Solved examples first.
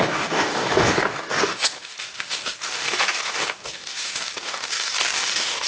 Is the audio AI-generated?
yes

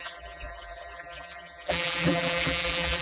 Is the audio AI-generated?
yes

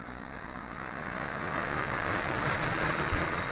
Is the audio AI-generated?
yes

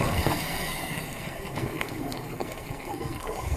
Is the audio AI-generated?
yes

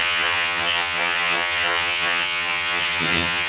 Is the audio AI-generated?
yes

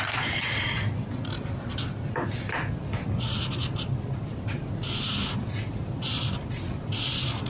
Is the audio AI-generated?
no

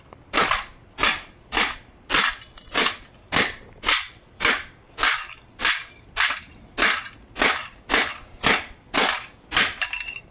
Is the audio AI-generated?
yes